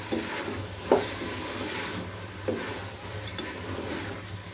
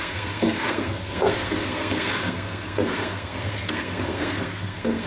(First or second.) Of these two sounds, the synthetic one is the second